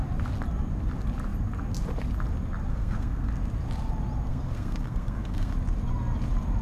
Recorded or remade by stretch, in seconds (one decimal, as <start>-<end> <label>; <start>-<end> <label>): 0.0-2.7 recorded; 2.7-3.3 remade; 3.3-4.3 recorded; 4.3-5.5 remade; 5.5-6.6 recorded

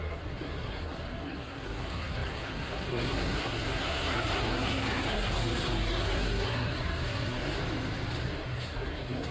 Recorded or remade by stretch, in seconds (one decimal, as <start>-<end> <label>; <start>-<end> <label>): 0.0-7.6 remade; 7.6-8.2 recorded; 8.2-9.3 remade

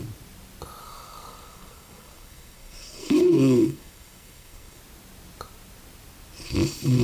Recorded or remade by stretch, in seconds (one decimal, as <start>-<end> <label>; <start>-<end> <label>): 0.0-0.8 recorded; 0.8-4.8 remade; 4.8-7.0 recorded